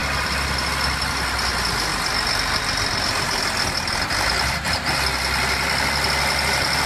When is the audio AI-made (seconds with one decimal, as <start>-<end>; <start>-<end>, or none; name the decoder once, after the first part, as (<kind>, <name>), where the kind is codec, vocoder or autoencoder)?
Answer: 0.0-0.6 (vocoder, BigVGAN v2); 1.9-3.0